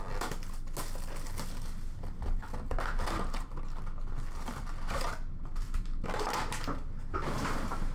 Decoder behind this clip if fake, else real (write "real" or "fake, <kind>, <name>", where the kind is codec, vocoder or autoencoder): real